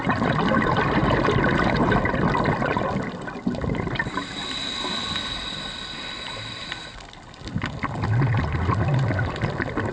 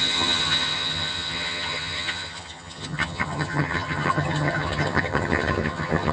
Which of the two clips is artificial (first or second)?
second